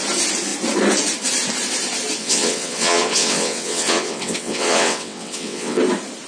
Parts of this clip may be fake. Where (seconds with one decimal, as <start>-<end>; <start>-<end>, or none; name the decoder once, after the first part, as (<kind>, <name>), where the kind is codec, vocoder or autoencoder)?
2.2-5.8 (vocoder, WaveNeXt)